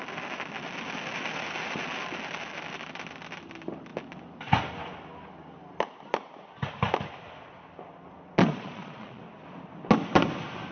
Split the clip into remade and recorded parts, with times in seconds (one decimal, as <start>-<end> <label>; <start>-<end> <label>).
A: 0.0-8.4 recorded; 8.4-9.2 remade; 9.2-10.7 recorded